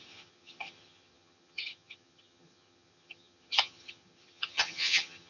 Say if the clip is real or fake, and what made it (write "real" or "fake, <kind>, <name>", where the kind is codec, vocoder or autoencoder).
fake, vocoder, HiFi-GAN